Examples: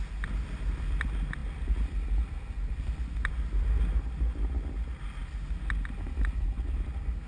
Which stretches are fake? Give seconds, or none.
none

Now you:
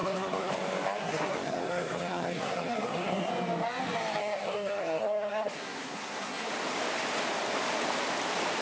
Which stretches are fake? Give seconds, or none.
0.0-0.5; 1.0-3.3; 4.2-6.5

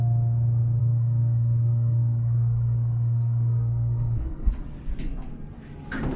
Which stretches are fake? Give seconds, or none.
0.8-4.5

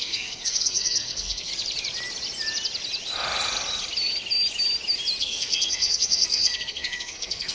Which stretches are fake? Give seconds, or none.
0.0-1.5; 5.2-7.5

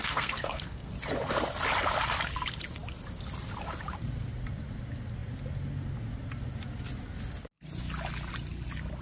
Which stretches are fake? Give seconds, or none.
0.0-0.9

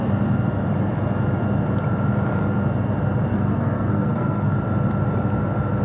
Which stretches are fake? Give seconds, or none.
3.3-4.5